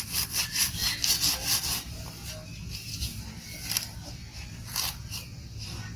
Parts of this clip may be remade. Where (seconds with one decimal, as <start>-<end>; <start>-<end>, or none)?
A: 0.0-0.8; 2.6-3.1; 4.6-6.0